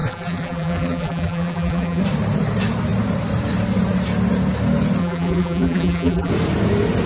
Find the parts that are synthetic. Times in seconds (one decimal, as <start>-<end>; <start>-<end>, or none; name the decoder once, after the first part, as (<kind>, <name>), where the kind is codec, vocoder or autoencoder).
0.0-2.0 (vocoder, BigVGAN v2); 5.0-6.3